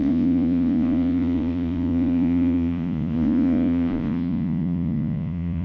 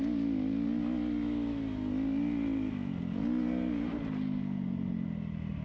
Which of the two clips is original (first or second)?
second